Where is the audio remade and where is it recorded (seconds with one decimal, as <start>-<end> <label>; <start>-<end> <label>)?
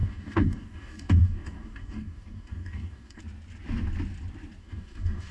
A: 0.0-3.2 remade; 3.2-4.6 recorded; 4.6-5.3 remade